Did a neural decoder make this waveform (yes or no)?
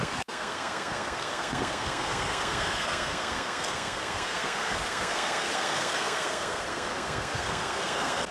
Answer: yes